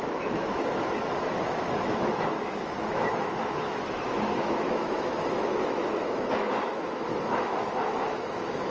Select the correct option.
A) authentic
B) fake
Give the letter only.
B